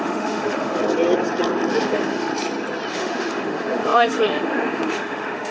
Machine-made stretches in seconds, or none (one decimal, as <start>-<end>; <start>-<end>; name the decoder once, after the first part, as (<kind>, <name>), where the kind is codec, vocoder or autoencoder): 0.0-0.8 (autoencoder, DAC-VAE); 1.7-2.3; 2.9-5.5